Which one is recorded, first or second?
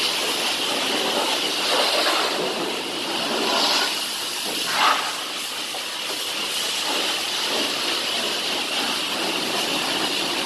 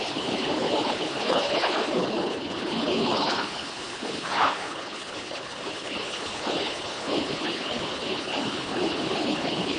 first